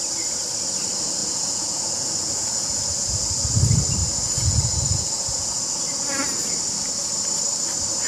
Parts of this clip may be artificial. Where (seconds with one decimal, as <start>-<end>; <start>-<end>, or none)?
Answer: 1.2-3.6; 4.0-5.7